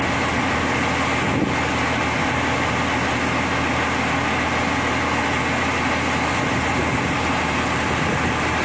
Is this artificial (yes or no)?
no